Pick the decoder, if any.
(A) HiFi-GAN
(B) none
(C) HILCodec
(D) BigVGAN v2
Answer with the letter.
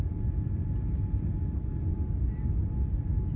B